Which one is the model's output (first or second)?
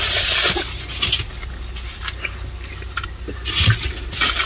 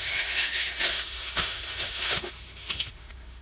second